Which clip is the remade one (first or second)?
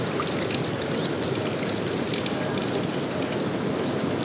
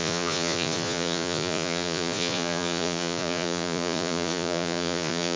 second